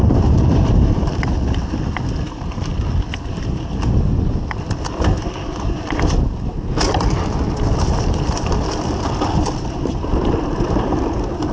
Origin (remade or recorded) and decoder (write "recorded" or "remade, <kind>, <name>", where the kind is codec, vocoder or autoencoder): remade, vocoder, BigVGAN v2